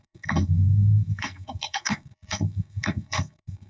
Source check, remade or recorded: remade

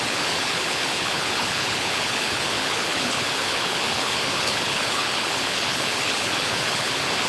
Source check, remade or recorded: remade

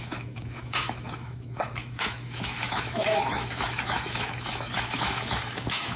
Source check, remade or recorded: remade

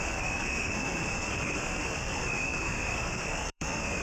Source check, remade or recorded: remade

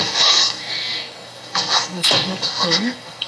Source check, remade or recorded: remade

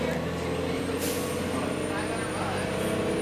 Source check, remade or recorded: recorded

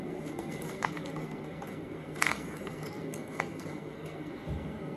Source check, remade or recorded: remade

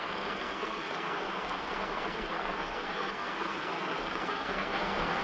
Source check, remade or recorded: remade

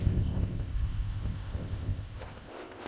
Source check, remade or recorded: remade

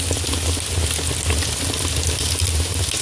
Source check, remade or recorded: recorded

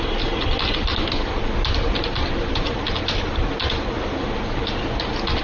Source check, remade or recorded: recorded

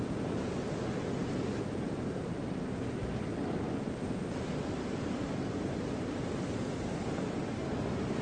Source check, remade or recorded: recorded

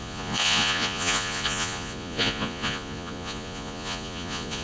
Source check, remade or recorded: remade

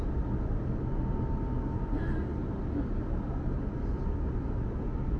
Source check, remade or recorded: recorded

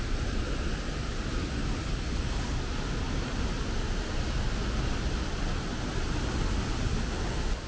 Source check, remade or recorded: recorded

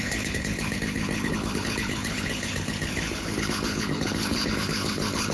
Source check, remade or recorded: remade